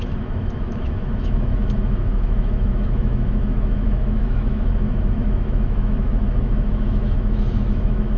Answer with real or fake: fake